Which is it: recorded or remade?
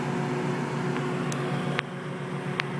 recorded